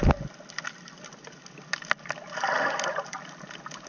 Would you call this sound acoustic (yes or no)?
yes